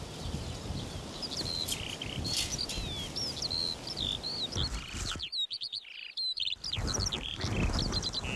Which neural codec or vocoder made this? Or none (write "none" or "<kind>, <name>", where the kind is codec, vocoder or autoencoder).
none